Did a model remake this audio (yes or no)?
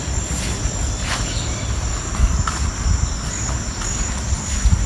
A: no